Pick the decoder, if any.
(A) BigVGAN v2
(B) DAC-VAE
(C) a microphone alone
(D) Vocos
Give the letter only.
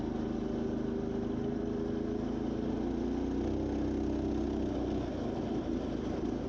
C